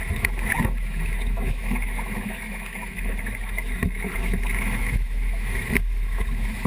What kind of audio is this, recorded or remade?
remade